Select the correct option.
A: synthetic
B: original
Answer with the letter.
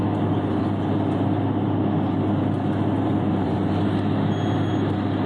B